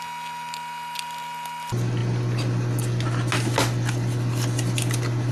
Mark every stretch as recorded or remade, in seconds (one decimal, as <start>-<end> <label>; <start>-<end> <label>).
0.0-5.3 recorded